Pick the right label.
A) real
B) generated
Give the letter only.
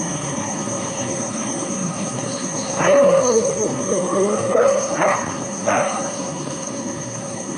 B